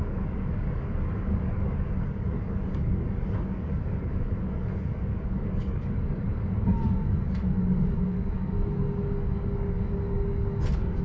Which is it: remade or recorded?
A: remade